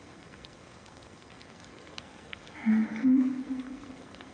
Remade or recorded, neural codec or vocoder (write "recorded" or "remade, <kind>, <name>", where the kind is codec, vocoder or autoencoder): remade, codec, SNAC